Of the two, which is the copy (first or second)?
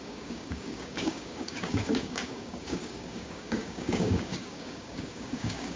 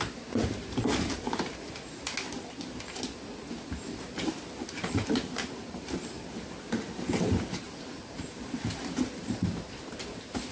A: first